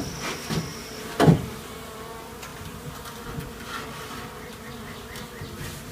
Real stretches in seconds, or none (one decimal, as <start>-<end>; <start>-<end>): 0.0-5.9